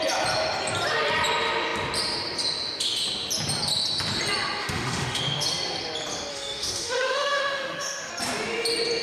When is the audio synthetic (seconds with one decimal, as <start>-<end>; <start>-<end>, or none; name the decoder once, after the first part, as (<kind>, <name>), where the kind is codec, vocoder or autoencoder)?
4.6-5.2 (autoencoder, DAC-VAE); 6.3-8.1